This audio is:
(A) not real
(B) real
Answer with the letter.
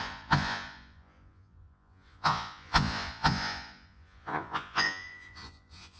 A